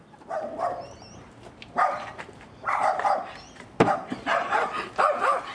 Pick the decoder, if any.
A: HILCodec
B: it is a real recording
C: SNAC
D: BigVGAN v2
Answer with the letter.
D